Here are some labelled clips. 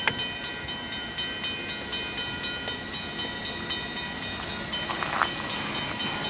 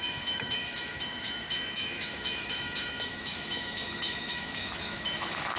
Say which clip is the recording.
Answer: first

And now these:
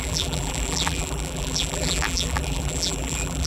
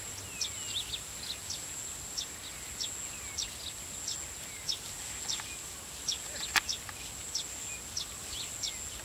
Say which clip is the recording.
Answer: second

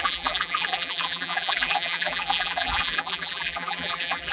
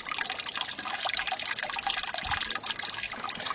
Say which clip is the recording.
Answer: second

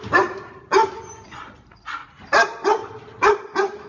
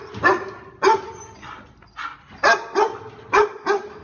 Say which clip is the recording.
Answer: second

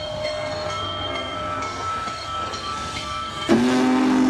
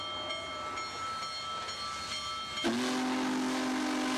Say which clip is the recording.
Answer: second